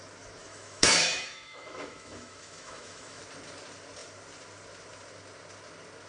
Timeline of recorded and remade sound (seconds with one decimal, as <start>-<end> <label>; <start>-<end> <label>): 0.0-0.4 recorded; 0.4-3.2 remade; 3.2-6.1 recorded